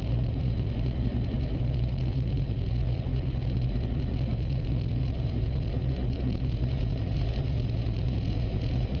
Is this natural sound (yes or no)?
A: no